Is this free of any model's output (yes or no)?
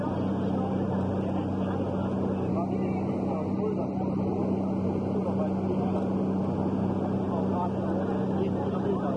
yes